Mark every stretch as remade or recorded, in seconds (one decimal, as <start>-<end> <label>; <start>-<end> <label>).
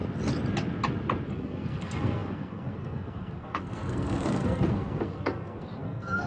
0.0-1.3 recorded; 1.3-6.3 remade